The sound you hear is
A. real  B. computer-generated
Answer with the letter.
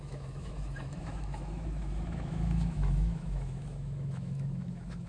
B